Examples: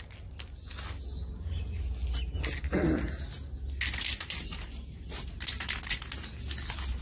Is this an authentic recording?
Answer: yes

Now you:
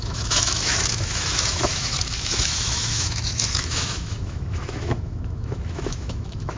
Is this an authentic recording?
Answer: no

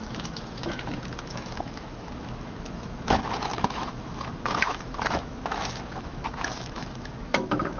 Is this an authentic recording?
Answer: no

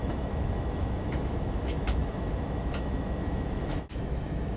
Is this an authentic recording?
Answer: no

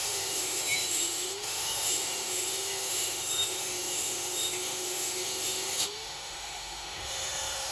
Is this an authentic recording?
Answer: no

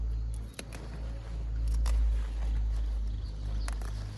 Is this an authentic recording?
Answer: yes